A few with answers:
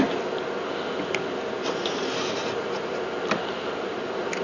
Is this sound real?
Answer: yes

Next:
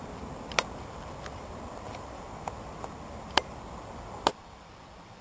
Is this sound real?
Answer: no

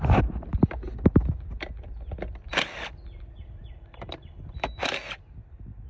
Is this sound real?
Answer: yes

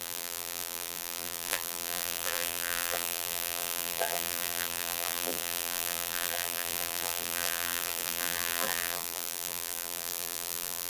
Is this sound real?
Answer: no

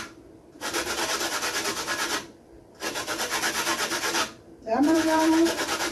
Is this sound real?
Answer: no